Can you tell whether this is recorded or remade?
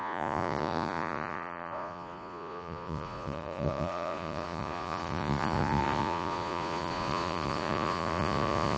remade